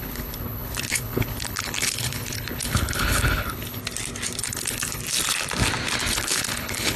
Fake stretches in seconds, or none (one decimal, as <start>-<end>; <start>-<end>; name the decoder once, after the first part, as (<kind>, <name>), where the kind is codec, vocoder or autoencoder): 0.0-3.8 (codec, HILCodec); 4.4-5.0; 6.1-7.0